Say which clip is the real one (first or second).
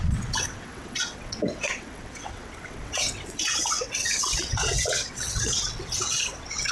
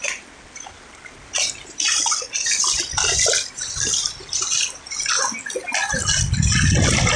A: second